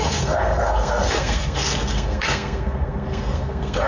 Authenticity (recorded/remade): remade